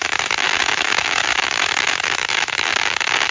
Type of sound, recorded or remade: remade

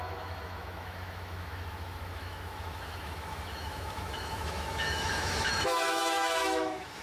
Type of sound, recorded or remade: remade